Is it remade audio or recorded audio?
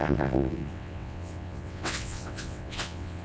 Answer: remade